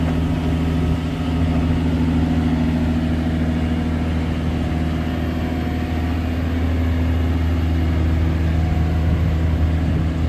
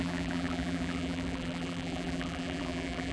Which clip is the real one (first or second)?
first